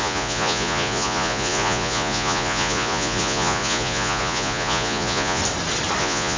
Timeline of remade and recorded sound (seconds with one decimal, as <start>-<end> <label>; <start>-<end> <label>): 0.0-5.4 remade; 5.4-6.0 recorded; 6.0-6.4 remade